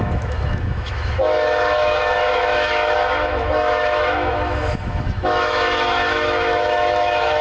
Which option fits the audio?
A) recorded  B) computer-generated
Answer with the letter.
B